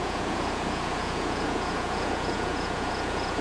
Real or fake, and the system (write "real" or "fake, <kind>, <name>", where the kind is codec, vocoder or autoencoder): fake, vocoder, Vocos